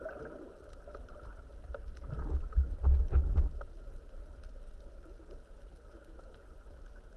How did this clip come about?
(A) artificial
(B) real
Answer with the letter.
B